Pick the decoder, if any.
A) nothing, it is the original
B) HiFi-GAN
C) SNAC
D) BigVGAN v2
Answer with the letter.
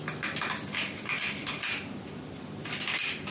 A